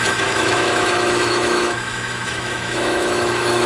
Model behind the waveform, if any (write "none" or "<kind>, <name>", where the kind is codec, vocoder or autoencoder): autoencoder, DAC-VAE